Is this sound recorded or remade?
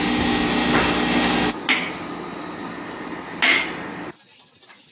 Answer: recorded